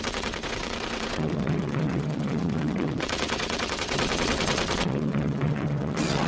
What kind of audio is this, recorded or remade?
remade